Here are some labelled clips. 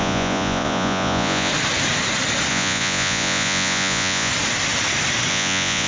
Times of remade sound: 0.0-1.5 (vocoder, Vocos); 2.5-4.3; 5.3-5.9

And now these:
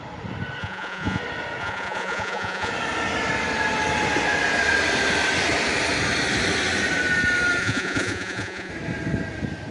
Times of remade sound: 0.6-1.2 (vocoder, Vocos); 1.6-2.7; 7.6-8.7

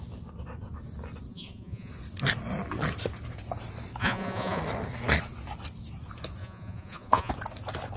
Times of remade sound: 1.3-1.9 (vocoder, Vocos); 4.0-4.6; 6.4-7.3

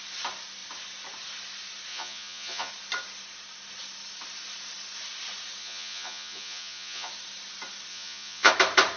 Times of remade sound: 1.9-2.7 (vocoder, Vocos); 5.6-7.1; 7.9-8.5

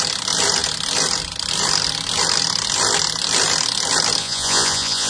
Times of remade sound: 4.2-5.1 (vocoder, Vocos)